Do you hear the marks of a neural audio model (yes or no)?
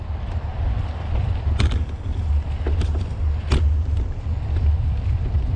yes